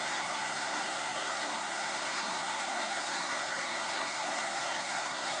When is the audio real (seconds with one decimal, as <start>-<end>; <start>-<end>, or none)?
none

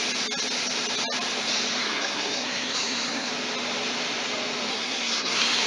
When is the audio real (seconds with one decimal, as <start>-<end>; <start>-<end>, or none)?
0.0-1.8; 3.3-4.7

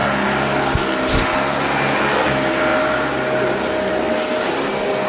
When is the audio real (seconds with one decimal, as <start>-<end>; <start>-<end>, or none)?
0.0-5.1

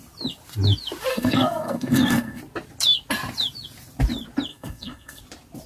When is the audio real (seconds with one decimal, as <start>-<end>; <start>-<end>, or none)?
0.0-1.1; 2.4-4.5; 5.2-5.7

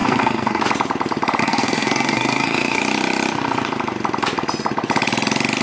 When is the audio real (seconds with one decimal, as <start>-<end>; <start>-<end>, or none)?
0.6-1.4; 2.8-5.6

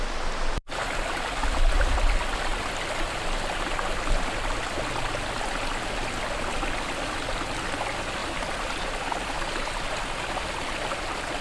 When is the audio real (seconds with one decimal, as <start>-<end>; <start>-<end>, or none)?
0.0-11.4

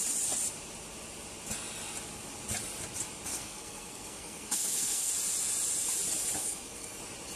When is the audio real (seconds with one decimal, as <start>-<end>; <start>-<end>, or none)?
0.0-3.3; 5.1-6.4; 7.0-7.4

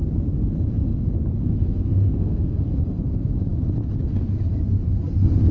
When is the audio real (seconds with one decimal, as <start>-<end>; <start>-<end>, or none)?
0.0-0.9; 2.7-5.5